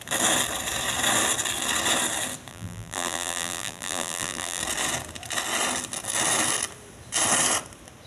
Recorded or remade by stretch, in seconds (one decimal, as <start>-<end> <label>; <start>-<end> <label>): 0.0-2.5 recorded; 2.5-4.6 remade; 4.6-8.1 recorded